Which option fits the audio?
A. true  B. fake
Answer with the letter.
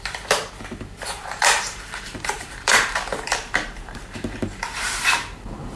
B